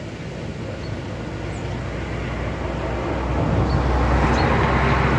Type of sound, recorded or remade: recorded